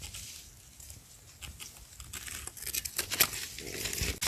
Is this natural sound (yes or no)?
yes